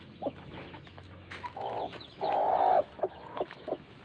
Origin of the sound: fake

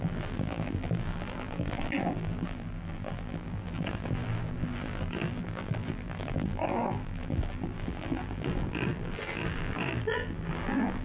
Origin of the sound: fake